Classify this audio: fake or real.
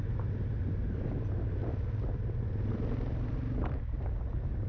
real